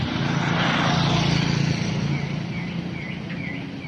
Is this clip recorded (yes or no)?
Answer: yes